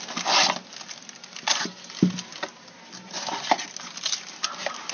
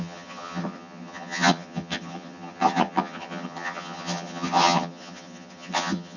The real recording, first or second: first